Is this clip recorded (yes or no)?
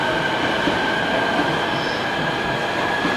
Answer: yes